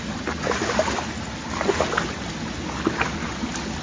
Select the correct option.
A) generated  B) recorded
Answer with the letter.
B